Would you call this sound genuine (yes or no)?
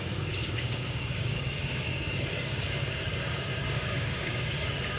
no